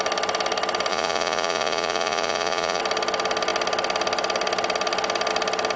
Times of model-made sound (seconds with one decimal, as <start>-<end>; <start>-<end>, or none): 0.9-2.8